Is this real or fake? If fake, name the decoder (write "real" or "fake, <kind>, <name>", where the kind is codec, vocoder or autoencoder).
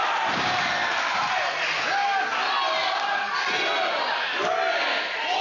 real